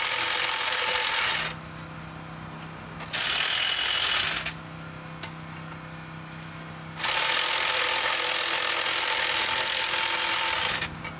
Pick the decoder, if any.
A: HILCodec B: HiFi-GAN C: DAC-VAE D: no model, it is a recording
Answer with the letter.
D